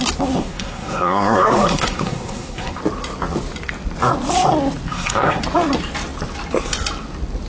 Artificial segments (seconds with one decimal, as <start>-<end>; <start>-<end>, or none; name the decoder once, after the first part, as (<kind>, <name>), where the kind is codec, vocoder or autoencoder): 0.4-2.8 (codec, SNAC); 4.9-5.4